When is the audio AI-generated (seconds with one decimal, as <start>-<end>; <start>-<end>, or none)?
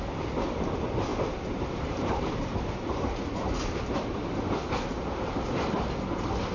1.1-4.2